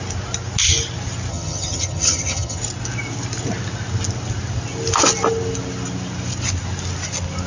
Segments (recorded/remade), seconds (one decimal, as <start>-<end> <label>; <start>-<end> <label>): 0.0-1.3 recorded; 1.3-2.6 remade; 2.6-7.5 recorded